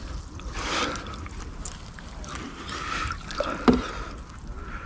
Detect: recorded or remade recorded